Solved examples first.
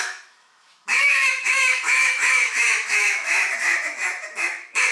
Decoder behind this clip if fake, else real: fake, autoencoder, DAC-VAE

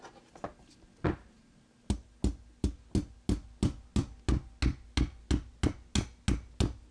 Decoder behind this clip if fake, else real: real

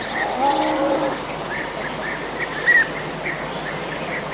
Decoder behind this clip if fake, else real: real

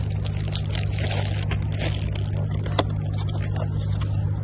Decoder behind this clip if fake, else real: real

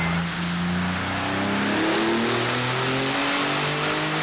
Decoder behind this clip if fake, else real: real